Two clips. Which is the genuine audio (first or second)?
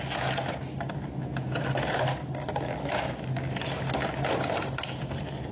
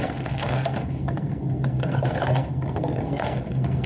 first